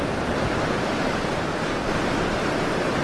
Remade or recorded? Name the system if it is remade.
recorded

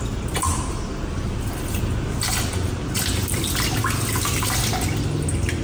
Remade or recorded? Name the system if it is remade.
recorded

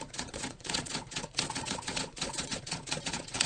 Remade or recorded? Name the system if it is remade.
remade, vocoder, Vocos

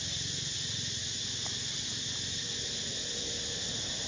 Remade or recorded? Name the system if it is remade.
recorded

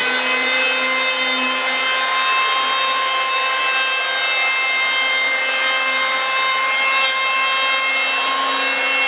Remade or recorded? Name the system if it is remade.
recorded